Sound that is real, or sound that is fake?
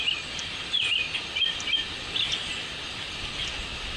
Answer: real